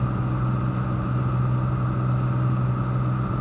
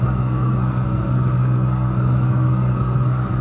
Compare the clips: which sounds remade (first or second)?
second